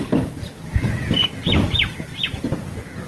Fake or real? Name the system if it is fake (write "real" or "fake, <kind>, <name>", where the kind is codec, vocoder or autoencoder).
real